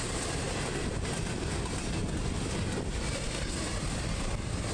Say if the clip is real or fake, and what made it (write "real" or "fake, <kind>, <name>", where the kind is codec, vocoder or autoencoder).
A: real